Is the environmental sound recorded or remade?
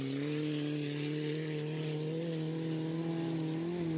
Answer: recorded